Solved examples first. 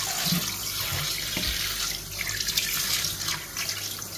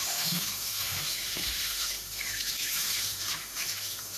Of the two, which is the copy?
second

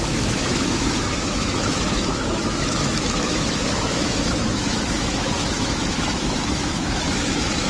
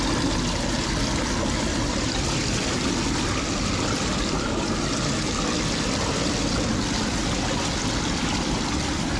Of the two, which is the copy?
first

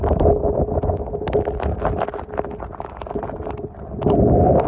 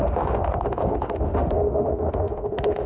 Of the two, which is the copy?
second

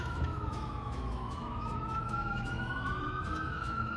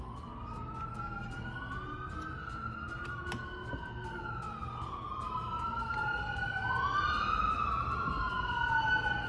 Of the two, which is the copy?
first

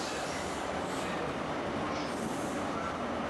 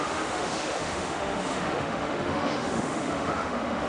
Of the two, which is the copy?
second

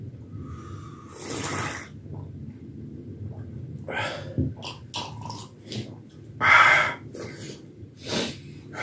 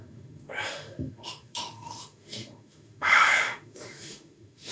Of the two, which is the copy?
second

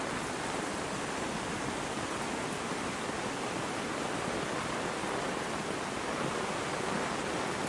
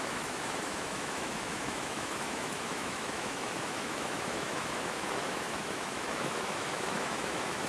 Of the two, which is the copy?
second